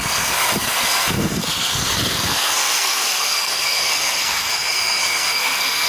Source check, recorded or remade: remade